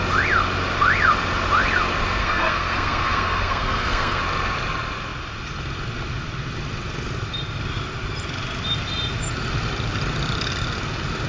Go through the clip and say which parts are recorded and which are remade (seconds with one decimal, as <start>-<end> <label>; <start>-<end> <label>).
0.0-2.2 recorded; 2.2-4.2 remade; 4.2-11.3 recorded